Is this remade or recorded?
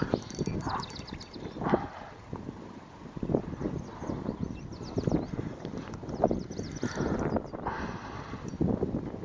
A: recorded